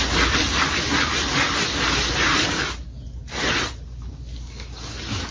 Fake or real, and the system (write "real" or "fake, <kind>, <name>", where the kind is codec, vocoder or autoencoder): real